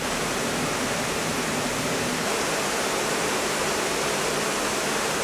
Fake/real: fake